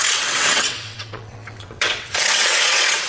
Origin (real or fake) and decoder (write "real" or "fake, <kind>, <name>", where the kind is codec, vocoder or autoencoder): fake, vocoder, WaveNeXt